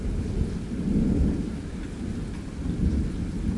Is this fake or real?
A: real